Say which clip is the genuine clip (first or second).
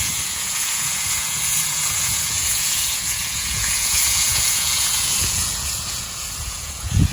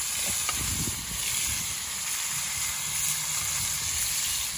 second